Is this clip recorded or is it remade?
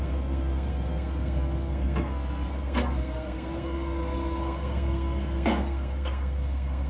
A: remade